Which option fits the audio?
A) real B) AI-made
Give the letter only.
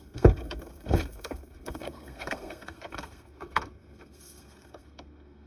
B